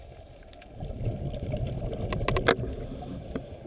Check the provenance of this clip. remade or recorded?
recorded